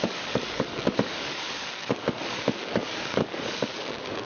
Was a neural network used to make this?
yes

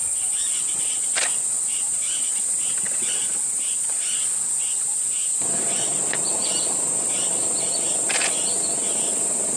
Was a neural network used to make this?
no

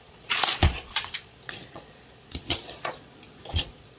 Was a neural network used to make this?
yes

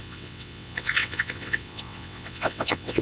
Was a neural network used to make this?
yes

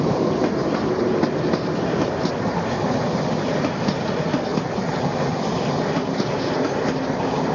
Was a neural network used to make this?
no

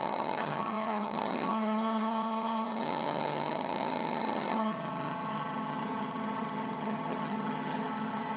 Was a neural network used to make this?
yes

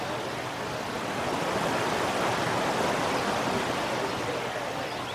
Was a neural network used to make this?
no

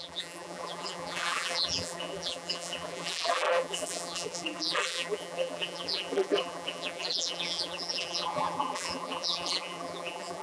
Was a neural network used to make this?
yes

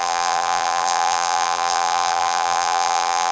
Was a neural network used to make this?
yes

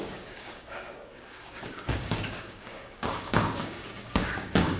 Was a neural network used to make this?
yes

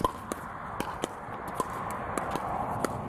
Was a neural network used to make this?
no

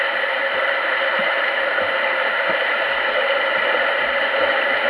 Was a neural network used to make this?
no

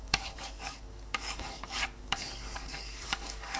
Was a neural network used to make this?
yes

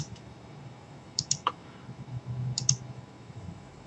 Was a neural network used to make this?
yes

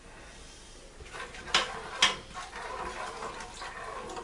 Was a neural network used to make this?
no